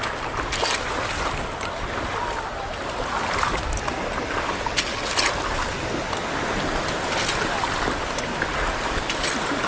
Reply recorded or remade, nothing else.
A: recorded